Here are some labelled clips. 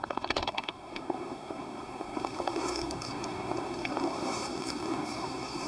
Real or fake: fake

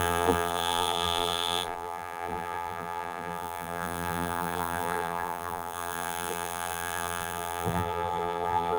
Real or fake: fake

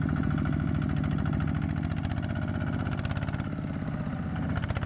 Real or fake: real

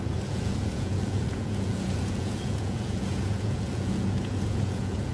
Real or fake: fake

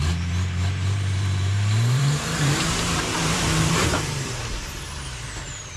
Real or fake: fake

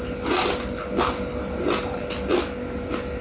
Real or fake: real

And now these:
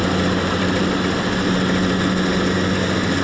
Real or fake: real